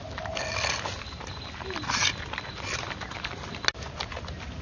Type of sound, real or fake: real